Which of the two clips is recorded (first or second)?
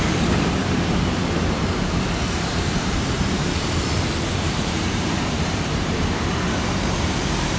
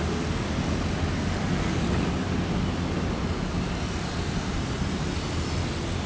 second